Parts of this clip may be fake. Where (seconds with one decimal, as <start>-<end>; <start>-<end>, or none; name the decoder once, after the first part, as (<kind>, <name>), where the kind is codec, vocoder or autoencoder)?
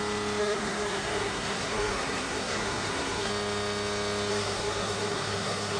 0.4-3.3 (codec, SNAC); 4.3-5.8